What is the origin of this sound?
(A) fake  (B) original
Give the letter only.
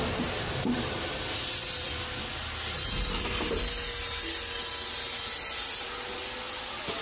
B